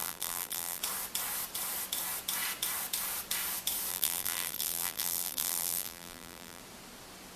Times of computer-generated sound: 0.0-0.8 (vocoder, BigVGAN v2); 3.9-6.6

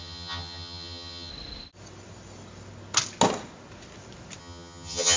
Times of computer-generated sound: 0.0-1.3 (vocoder, HiFi-GAN); 4.4-5.2

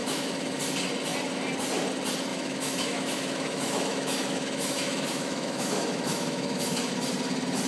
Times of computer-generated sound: 0.0-0.6 (autoencoder, DAC-VAE); 2.3-6.9